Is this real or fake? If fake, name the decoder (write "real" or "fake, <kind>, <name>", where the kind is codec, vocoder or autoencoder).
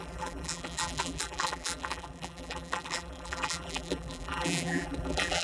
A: fake, vocoder, BigVGAN v2